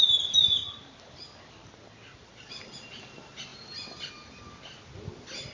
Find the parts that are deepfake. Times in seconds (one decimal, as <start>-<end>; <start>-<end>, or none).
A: none